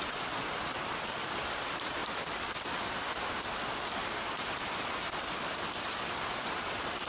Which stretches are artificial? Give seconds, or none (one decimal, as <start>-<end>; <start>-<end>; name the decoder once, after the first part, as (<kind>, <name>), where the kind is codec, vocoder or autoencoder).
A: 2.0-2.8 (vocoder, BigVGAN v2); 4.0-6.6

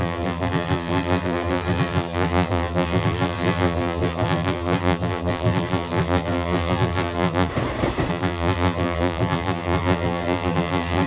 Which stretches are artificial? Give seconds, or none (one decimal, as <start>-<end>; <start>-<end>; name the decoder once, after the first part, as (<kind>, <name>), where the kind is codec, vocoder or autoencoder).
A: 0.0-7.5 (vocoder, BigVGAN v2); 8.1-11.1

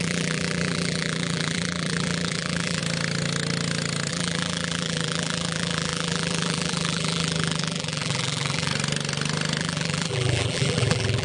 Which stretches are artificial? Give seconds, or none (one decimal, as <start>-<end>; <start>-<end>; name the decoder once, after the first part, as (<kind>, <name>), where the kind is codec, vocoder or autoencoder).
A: 0.0-2.8 (vocoder, BigVGAN v2); 4.1-8.7; 9.6-11.2

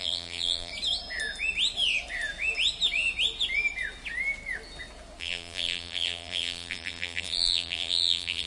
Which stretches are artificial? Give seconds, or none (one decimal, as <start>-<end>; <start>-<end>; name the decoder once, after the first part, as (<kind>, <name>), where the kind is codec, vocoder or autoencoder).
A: 0.0-0.7 (vocoder, BigVGAN v2); 5.2-8.5

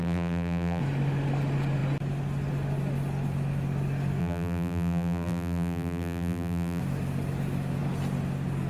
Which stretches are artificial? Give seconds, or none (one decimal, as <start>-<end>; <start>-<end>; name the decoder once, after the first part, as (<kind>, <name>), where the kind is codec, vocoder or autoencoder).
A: 0.0-0.8 (vocoder, BigVGAN v2); 4.2-6.8